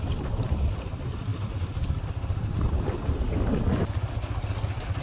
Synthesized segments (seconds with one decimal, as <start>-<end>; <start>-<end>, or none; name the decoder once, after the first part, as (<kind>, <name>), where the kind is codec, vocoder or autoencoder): none